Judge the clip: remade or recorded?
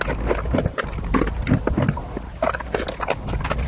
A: recorded